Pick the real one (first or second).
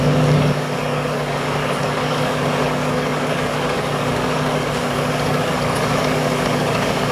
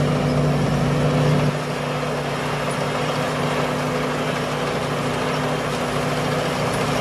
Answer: second